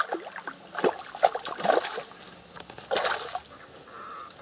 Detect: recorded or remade recorded